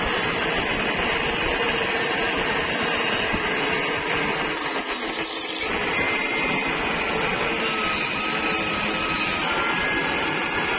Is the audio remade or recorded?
recorded